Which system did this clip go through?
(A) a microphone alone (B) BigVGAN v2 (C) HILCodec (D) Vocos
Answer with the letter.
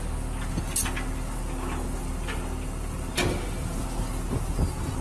A